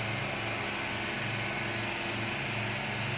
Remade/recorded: recorded